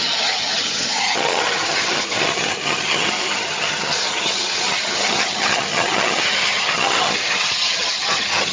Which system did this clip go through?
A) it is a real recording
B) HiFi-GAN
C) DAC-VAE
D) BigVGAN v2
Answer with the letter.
B